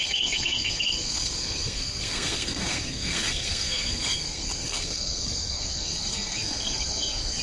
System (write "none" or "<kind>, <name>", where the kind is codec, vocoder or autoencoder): codec, SNAC